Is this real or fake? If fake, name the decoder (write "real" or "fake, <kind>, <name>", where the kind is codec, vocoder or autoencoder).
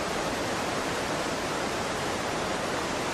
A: fake, vocoder, BigVGAN v2